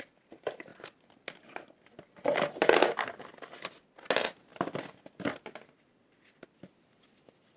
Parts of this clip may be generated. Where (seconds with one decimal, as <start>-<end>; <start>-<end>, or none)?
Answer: none